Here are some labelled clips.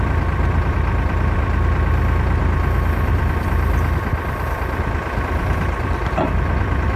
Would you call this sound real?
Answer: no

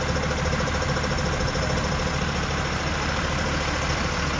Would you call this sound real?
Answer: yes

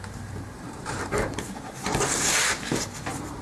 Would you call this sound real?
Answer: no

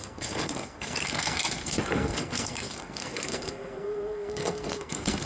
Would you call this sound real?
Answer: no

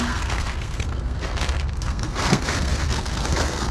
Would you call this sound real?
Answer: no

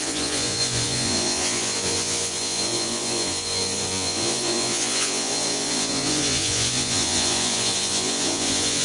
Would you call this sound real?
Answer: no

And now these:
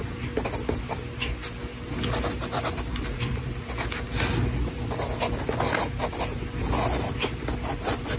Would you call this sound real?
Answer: yes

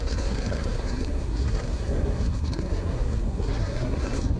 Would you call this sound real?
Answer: no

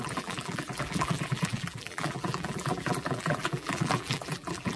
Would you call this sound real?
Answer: no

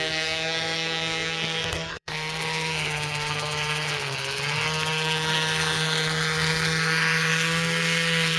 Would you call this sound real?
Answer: no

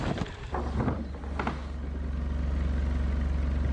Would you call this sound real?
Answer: yes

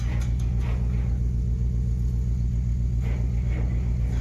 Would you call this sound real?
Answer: yes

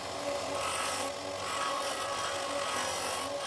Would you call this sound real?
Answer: yes